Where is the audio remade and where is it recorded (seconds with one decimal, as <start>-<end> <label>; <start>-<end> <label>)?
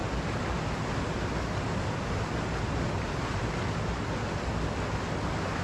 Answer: 0.0-5.6 recorded